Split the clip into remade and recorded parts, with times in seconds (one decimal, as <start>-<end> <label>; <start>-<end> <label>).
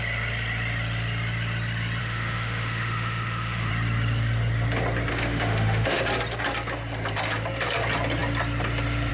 0.0-2.0 recorded; 2.0-3.7 remade; 3.7-5.1 recorded; 5.1-6.0 remade; 6.0-9.1 recorded